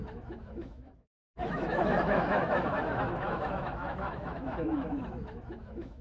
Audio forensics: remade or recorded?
remade